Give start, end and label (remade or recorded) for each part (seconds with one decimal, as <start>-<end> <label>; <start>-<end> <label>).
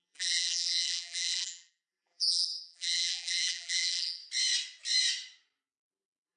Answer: 0.0-4.2 remade; 4.2-5.9 recorded; 5.9-6.4 remade